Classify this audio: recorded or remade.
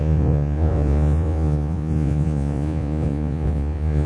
remade